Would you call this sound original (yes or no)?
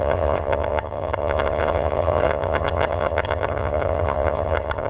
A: no